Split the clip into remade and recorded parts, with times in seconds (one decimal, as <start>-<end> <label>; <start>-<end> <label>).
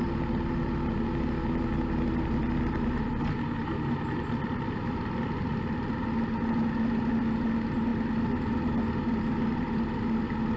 0.0-10.6 recorded